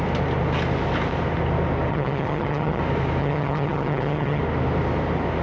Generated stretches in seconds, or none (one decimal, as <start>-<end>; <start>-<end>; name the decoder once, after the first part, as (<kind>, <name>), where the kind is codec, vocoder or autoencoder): 1.9-2.8 (vocoder, HiFi-GAN); 3.2-4.4